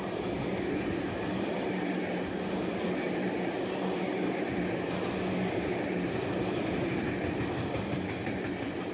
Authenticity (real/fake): real